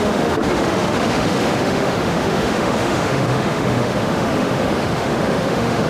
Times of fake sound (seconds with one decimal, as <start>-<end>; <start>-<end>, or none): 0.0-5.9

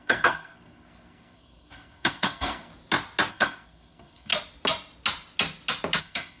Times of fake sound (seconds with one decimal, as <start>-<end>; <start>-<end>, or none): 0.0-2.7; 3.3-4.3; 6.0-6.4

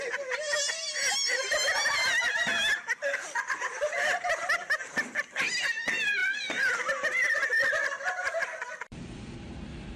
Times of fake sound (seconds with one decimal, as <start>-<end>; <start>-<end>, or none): 6.2-9.2

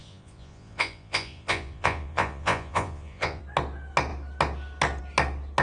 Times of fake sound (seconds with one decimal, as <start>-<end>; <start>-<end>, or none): 0.0-3.4

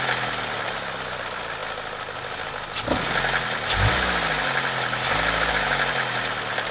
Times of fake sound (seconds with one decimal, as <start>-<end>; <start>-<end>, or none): none